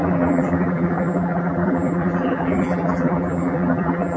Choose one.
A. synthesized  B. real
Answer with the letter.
A